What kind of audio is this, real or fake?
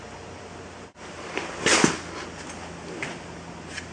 real